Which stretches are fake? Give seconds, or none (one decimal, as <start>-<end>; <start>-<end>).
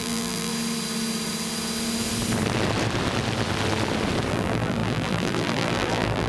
0.0-0.5; 4.3-6.3